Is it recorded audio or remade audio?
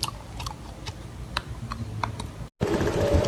recorded